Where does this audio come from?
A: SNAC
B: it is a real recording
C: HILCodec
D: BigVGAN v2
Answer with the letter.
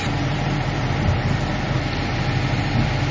D